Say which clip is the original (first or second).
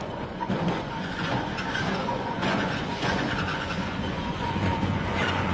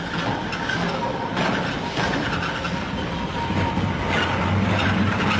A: second